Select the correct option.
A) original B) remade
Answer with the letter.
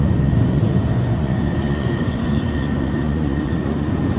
B